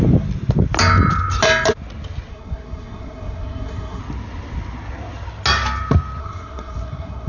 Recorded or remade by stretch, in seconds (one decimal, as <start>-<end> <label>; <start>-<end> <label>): 0.0-2.3 recorded; 2.3-4.0 remade; 4.0-6.2 recorded; 6.2-7.3 remade